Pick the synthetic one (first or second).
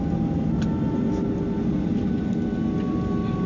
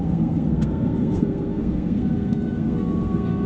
second